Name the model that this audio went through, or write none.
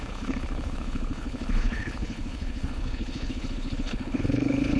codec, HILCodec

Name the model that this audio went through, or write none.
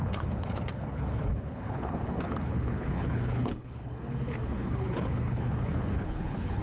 codec, HILCodec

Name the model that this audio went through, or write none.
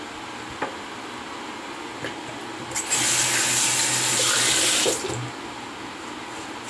none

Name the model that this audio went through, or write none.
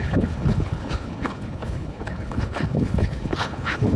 codec, HILCodec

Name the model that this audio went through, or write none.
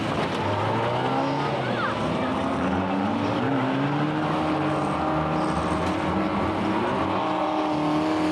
none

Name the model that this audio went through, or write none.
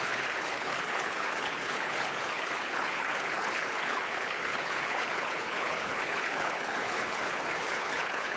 codec, HILCodec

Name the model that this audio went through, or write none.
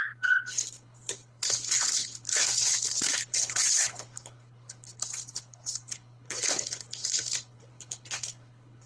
codec, HILCodec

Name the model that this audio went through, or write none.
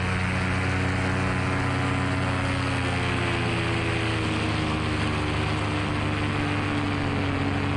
none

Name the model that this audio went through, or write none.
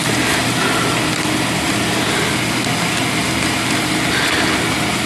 none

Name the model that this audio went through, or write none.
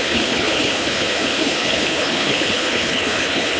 codec, HILCodec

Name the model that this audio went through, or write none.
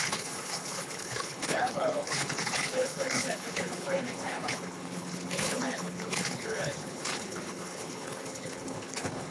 codec, HILCodec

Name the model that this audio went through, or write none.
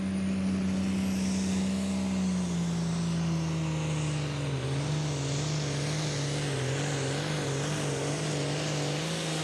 none